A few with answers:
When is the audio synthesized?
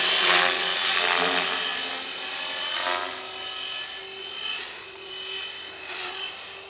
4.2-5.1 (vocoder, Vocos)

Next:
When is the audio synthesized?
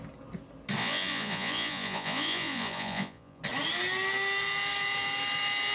0.8-3.4 (vocoder, Vocos)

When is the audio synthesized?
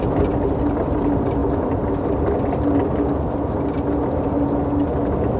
none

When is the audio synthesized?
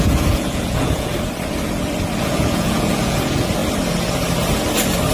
0.0-1.1 (vocoder, Vocos); 2.2-3.6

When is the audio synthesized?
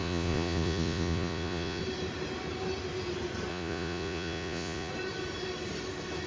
0.0-1.8 (vocoder, Vocos); 3.5-4.9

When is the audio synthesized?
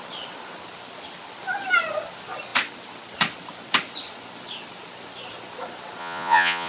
6.0-6.7 (vocoder, Vocos)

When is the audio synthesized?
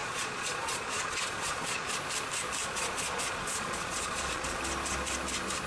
0.0-1.9 (vocoder, Vocos); 2.6-4.6